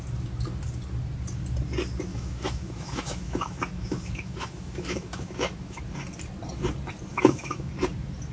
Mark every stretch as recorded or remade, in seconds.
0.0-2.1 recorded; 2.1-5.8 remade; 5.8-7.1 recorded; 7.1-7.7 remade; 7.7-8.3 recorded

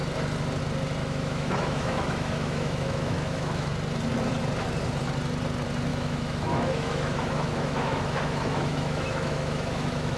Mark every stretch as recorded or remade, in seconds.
0.0-1.0 recorded; 1.0-3.7 remade; 3.7-5.9 recorded; 5.9-10.2 remade

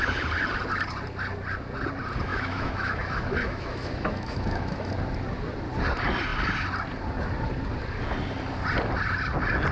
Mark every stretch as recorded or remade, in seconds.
0.0-2.3 recorded; 2.3-4.9 remade; 4.9-9.7 recorded

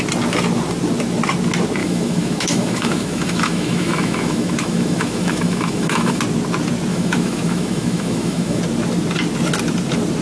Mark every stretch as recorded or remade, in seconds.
0.0-1.8 recorded; 1.8-6.2 remade; 6.2-6.9 recorded; 6.9-8.6 remade; 8.6-10.2 recorded